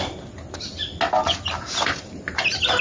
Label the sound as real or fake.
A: real